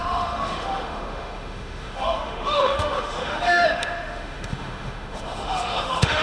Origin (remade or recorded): remade